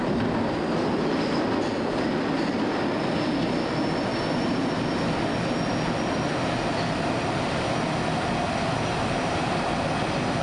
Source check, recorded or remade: recorded